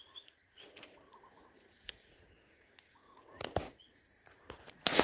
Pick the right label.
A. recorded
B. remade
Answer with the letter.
B